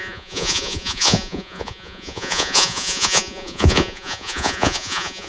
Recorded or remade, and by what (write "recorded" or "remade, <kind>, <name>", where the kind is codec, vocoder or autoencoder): remade, vocoder, Vocos